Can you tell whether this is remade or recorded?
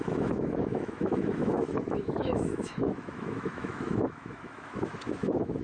remade